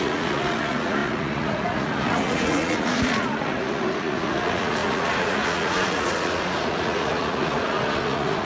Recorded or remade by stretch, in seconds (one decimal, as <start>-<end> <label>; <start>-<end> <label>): 0.0-8.4 remade